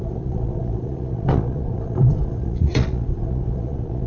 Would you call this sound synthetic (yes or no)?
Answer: yes